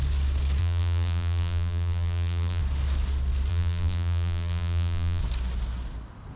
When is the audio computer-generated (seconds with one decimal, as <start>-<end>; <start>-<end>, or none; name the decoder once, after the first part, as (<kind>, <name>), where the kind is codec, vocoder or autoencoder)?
0.6-2.6 (vocoder, BigVGAN v2); 3.5-5.2